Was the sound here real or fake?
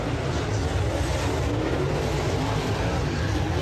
real